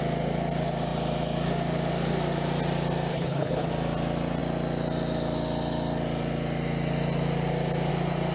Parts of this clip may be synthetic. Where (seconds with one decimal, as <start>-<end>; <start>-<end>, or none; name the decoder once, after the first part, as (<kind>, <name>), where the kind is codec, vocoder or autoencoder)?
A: 3.1-3.7 (codec, HILCodec)